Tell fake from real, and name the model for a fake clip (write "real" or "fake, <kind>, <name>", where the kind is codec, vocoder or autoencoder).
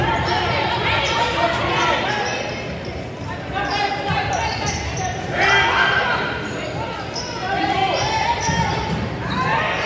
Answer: real